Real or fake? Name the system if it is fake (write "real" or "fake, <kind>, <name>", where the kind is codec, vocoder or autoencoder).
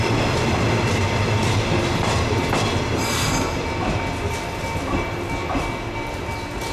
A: real